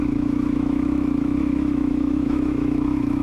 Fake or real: fake